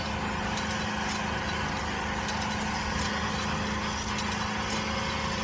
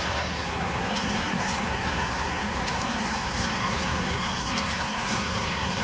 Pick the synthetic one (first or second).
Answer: second